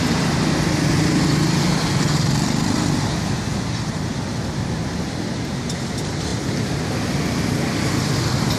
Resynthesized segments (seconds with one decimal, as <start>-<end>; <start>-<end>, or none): none